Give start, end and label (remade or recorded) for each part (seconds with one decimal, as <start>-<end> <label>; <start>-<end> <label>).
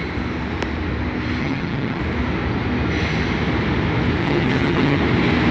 0.0-1.4 recorded; 1.4-2.0 remade; 2.0-4.2 recorded; 4.2-5.0 remade; 5.0-5.5 recorded